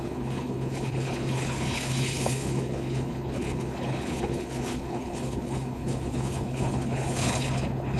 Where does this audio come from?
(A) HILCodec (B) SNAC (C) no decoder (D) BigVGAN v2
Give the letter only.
A